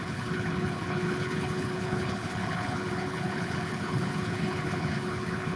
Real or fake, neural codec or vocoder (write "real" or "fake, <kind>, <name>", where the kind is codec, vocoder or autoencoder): fake, codec, HILCodec